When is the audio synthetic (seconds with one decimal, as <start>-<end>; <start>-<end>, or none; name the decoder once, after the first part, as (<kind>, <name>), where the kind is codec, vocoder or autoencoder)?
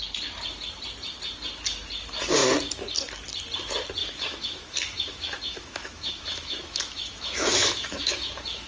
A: 4.0-8.7 (autoencoder, DAC-VAE)